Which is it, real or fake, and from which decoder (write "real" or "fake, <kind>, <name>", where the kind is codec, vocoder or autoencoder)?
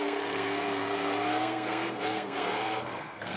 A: fake, codec, SNAC